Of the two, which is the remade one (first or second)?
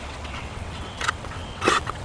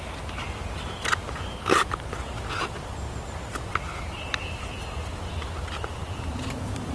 first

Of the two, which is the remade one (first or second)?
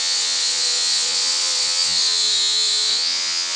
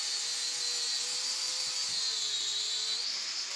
first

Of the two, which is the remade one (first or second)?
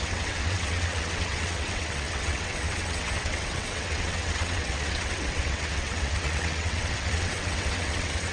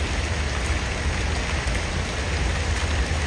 first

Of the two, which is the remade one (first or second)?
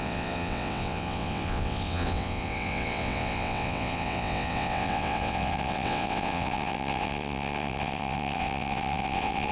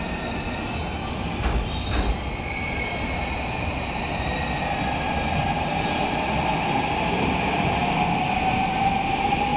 first